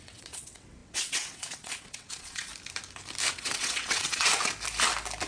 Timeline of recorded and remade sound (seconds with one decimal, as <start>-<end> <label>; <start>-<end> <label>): 0.0-2.5 remade; 2.5-3.3 recorded; 3.3-4.3 remade; 4.3-5.3 recorded

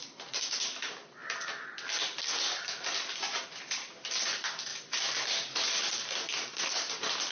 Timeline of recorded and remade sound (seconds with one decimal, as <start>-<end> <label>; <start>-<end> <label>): 0.0-7.3 recorded